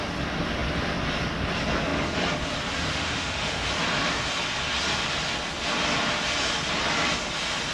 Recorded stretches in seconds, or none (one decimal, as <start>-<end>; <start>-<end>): 0.0-2.9; 3.7-7.7